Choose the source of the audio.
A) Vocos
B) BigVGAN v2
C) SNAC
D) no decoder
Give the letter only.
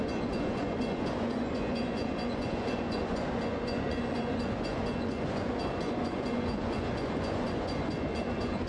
A